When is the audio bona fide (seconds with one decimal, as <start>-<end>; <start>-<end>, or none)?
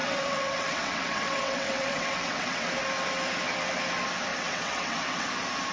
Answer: 2.7-4.3; 5.3-5.7